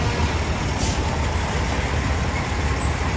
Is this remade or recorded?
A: recorded